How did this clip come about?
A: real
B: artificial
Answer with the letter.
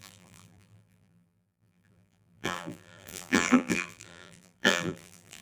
B